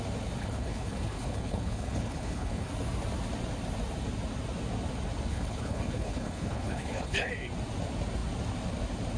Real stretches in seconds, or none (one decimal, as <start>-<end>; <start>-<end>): 0.0-0.4; 2.7-5.3; 7.3-9.2